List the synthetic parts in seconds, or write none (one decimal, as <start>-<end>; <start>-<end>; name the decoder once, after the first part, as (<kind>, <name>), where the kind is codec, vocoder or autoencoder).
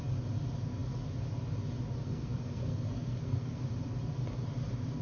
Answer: 2.0-3.7 (codec, SNAC)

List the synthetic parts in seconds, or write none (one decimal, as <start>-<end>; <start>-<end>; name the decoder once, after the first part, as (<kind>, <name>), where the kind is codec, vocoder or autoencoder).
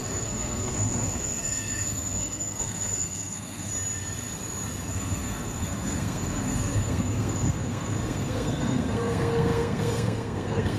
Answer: 0.0-3.7 (codec, SNAC); 4.9-10.8